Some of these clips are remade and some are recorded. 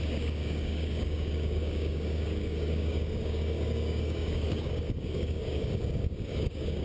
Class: remade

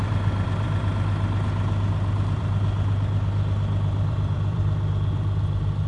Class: remade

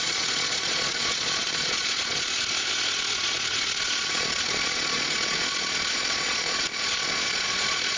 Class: remade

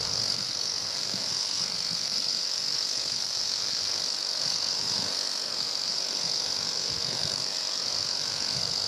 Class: remade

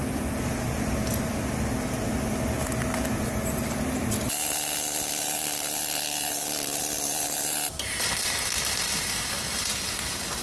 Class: recorded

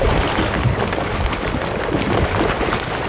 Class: recorded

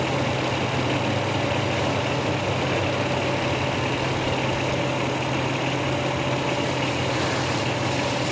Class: recorded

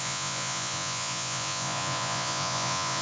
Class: remade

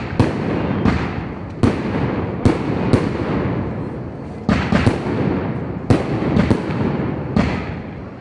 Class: recorded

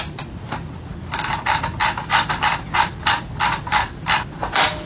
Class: recorded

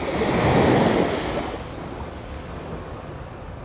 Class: recorded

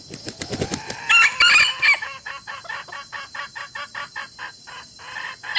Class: recorded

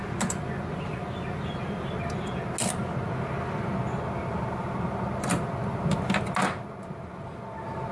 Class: recorded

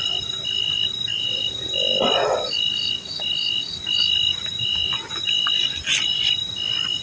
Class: recorded